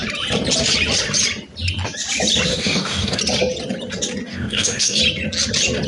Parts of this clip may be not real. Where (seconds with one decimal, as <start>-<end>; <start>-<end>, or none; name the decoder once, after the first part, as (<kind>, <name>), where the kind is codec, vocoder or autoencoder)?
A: 2.5-3.2 (codec, DAC); 4.3-5.0